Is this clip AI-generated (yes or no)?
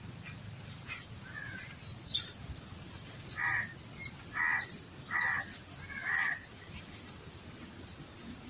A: no